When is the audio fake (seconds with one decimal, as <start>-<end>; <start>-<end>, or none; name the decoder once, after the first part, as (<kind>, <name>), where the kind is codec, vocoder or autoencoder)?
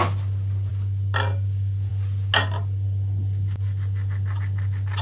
none